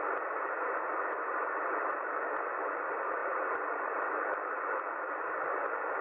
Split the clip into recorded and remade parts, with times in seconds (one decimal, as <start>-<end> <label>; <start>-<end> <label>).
0.0-6.0 recorded